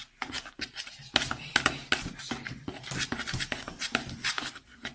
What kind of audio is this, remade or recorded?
recorded